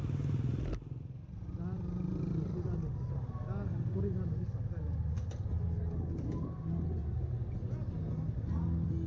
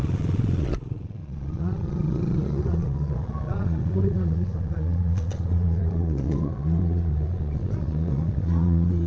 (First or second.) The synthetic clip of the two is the second